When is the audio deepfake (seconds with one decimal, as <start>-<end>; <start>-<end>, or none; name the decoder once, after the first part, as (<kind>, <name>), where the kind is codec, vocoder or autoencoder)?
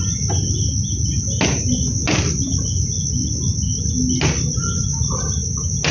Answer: none